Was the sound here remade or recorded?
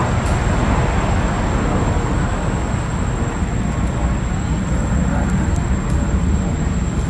recorded